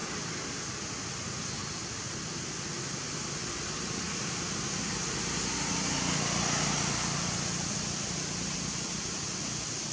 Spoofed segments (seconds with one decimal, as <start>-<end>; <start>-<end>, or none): 0.0-1.8